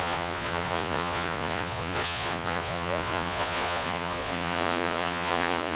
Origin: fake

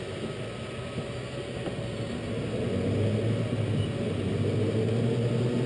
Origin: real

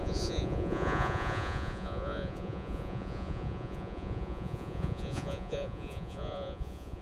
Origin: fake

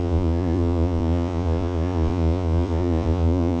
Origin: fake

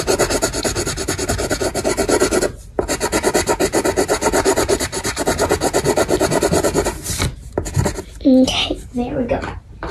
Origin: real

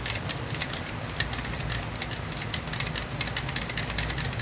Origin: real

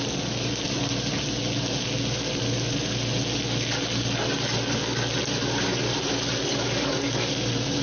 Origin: real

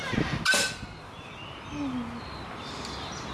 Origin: real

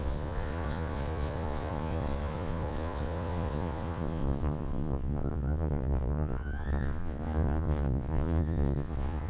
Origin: fake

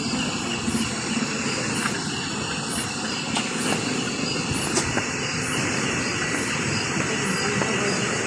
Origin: real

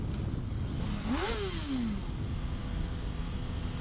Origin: real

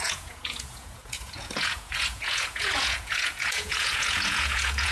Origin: fake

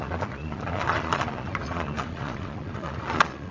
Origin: fake